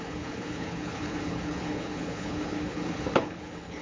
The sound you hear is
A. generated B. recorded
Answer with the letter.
A